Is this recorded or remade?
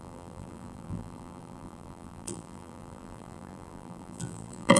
remade